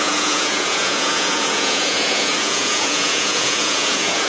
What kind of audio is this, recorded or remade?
remade